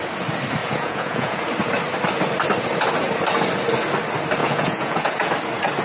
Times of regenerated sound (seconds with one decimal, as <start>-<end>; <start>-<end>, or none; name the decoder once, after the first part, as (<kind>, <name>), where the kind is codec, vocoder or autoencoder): 0.6-1.4 (vocoder, Vocos); 4.4-5.3